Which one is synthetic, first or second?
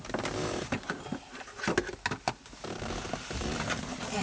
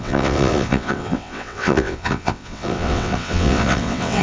second